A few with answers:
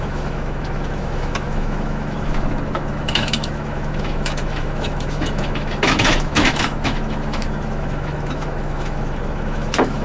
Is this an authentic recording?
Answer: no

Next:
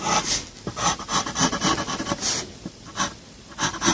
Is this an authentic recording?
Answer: yes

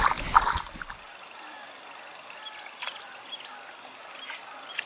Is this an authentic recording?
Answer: yes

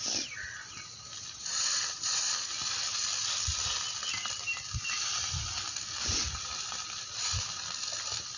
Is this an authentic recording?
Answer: yes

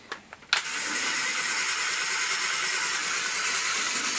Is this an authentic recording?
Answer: yes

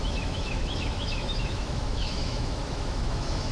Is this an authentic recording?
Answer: no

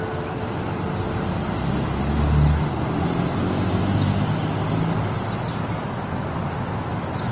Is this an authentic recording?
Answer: yes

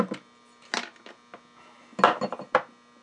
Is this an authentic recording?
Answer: yes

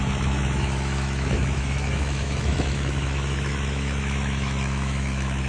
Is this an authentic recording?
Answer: no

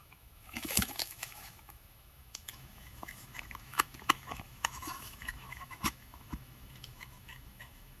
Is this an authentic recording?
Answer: no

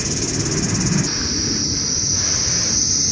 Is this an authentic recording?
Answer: yes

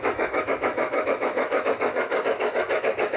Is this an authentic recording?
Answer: no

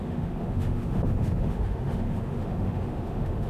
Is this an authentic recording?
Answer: no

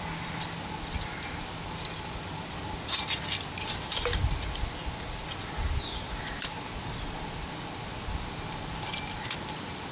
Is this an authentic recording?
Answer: yes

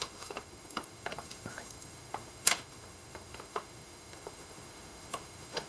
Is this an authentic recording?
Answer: no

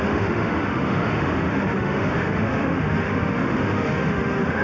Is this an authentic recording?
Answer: no